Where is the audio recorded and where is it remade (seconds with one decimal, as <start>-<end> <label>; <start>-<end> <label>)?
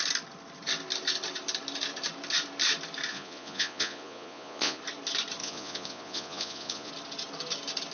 0.0-3.1 recorded; 3.1-4.8 remade; 4.8-5.4 recorded; 5.4-6.9 remade; 6.9-7.9 recorded